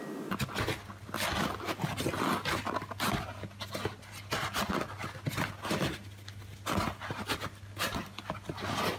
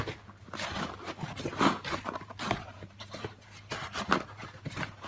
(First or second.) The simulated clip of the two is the second